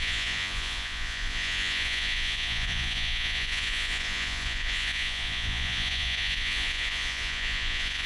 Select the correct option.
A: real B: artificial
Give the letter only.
B